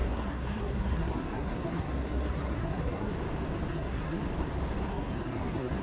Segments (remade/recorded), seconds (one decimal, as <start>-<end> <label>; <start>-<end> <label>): 0.0-3.1 remade; 3.1-3.7 recorded; 3.7-4.2 remade; 4.2-4.9 recorded; 4.9-5.8 remade